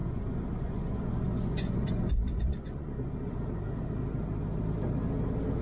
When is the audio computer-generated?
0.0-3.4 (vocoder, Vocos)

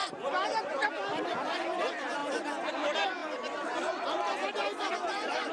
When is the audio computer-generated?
none

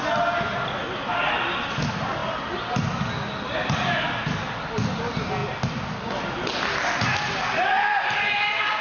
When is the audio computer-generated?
none